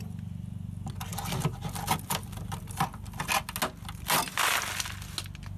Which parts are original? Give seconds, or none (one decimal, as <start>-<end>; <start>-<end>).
0.0-5.6